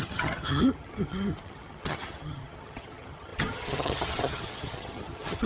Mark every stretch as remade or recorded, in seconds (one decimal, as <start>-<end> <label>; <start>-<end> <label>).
0.0-5.5 remade